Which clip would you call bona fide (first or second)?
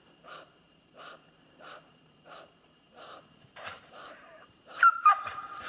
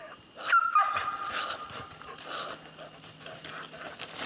second